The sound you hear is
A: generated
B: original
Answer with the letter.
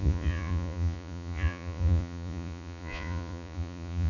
A